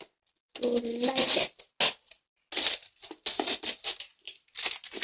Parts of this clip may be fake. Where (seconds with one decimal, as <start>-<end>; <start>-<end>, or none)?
none